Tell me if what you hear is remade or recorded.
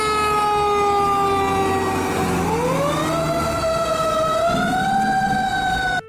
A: recorded